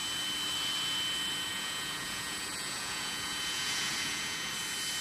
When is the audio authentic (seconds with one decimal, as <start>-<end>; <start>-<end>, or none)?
0.0-1.5; 4.5-5.0